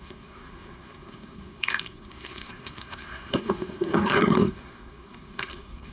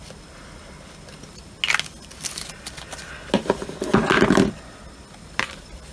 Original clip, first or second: second